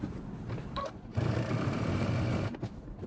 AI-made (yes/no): yes